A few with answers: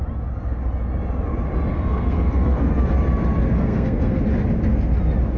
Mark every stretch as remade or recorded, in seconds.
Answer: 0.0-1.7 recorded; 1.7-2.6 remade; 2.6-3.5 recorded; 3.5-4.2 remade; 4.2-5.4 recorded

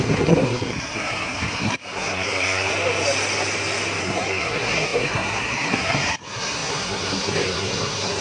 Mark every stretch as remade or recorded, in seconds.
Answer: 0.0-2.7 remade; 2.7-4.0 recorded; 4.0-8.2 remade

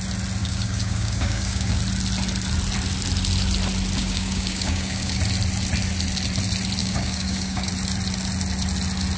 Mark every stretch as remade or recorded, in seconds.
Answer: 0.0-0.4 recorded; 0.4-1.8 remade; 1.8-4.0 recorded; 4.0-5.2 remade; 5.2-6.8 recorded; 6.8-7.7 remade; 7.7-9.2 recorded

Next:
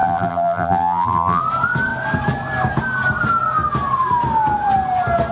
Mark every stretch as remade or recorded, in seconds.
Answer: 0.0-1.4 remade; 1.4-5.3 recorded

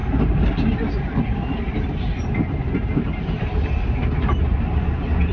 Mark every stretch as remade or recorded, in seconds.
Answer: 0.0-5.3 recorded

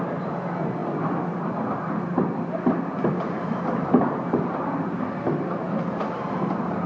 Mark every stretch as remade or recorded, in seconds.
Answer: 0.0-6.9 recorded